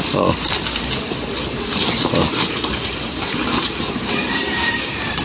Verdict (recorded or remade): remade